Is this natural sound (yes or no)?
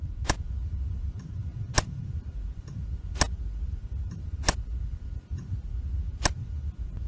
yes